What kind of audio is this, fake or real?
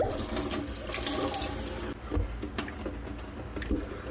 real